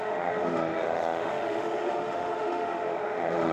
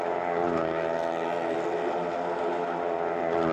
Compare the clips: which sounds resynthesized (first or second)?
first